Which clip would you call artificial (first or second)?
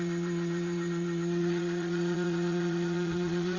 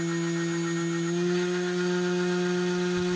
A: first